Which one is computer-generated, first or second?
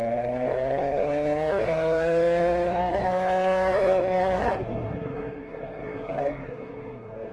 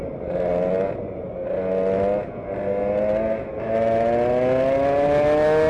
first